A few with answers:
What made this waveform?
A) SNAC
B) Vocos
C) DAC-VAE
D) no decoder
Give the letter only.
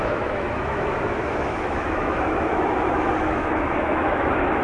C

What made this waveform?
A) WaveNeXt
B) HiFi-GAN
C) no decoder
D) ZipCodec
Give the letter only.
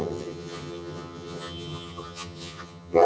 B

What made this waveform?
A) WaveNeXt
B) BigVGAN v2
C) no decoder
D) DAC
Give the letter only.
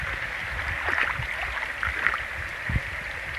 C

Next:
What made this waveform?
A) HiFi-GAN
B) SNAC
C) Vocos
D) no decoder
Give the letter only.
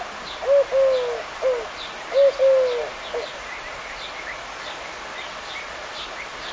D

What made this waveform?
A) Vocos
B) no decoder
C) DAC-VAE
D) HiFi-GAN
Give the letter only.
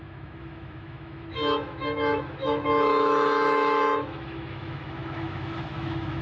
C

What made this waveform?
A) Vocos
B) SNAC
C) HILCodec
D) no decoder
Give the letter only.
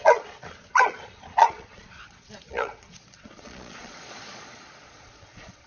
A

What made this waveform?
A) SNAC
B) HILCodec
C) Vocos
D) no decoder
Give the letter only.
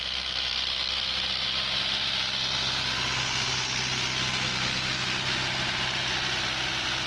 D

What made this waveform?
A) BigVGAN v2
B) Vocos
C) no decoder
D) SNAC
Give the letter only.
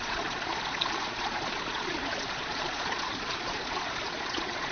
B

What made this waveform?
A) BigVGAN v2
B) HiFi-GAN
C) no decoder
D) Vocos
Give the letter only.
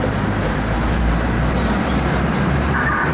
A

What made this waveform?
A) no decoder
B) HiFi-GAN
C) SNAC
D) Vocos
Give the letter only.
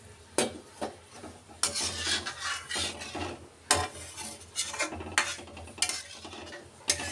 A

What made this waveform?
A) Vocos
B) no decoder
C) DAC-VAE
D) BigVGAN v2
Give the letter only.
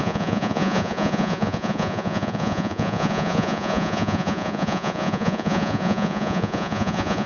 A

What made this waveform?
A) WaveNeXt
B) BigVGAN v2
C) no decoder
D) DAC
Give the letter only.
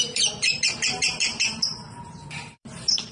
B